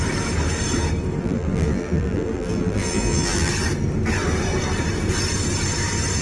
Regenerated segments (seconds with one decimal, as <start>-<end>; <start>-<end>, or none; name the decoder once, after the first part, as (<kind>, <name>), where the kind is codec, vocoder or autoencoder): 1.2-3.5 (vocoder, BigVGAN v2)